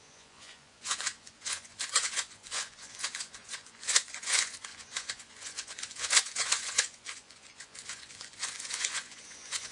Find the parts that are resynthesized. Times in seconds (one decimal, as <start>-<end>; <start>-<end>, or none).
0.0-9.7